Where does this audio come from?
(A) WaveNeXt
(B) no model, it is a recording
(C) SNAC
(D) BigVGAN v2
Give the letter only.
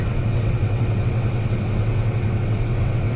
A